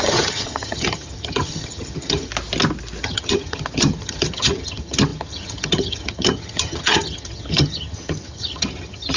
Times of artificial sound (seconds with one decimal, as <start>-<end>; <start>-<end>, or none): 0.0-2.3; 3.0-9.2